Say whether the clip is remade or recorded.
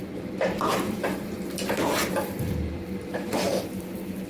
remade